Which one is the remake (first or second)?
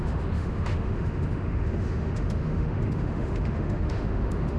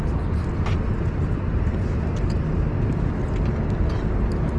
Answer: first